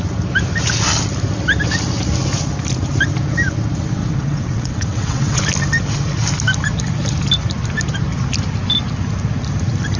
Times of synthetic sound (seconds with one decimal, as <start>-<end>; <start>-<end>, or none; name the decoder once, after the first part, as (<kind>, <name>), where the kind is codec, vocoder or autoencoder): 4.0-5.4 (vocoder, WaveNeXt)